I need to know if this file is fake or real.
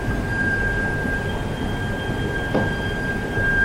fake